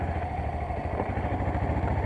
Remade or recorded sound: recorded